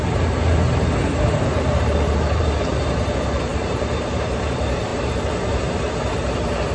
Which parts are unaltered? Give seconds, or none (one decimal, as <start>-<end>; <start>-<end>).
0.0-1.0; 2.8-3.5; 4.4-6.7